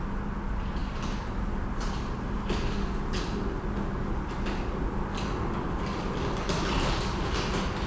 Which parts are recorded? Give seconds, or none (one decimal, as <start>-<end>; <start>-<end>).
0.0-7.9